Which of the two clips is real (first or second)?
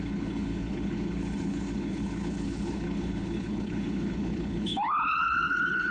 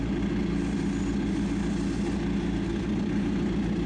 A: second